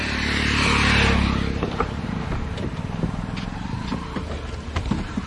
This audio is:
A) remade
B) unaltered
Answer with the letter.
A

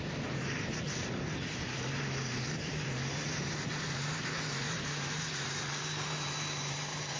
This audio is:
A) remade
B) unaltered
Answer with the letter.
A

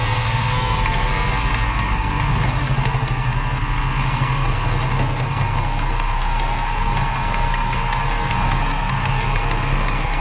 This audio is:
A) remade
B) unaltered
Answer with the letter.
A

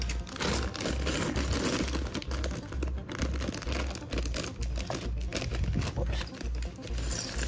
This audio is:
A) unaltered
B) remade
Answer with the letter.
A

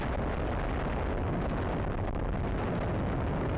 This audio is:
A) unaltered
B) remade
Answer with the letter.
A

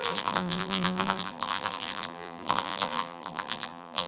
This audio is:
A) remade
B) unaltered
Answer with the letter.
A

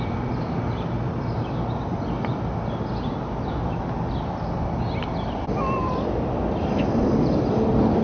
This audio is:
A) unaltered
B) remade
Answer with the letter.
A